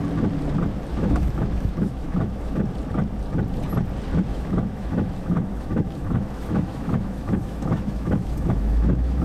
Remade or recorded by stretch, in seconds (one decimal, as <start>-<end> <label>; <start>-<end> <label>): 0.0-0.9 recorded; 0.9-2.6 remade; 2.6-4.3 recorded; 4.3-9.2 remade